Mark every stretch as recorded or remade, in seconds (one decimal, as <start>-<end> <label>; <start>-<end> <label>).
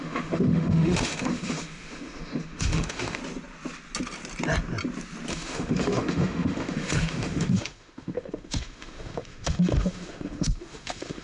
0.0-3.2 remade; 3.2-5.3 recorded; 5.3-11.2 remade